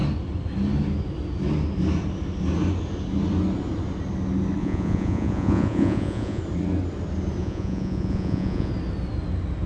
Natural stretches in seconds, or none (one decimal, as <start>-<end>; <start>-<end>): 0.0-4.6; 6.4-7.4; 8.7-9.7